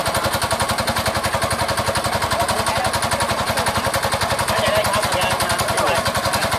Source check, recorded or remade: recorded